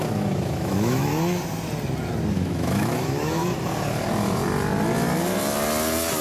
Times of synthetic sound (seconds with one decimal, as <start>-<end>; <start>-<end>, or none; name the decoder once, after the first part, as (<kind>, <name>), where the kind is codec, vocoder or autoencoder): 0.0-1.1 (autoencoder, DAC-VAE); 2.3-3.4